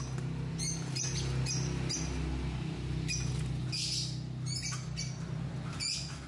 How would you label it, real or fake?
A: real